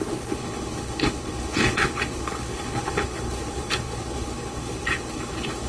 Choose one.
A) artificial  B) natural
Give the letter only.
A